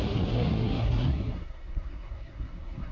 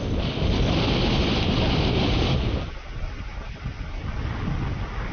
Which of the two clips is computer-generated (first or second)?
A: first